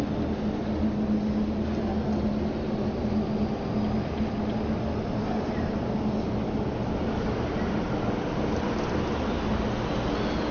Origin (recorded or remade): recorded